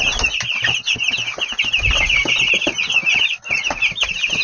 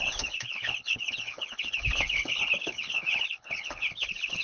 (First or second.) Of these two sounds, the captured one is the first